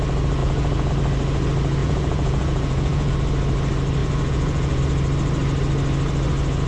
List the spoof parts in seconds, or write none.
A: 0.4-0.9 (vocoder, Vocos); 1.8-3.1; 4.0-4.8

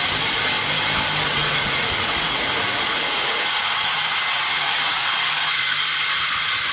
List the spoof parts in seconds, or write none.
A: 1.3-5.3 (vocoder, Vocos)

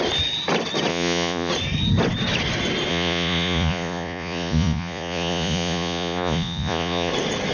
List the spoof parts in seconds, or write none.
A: 0.9-1.5 (vocoder, Vocos); 2.9-7.1

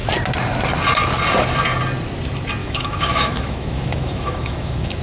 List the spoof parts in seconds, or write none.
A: 2.6-5.0 (autoencoder, DAC-VAE)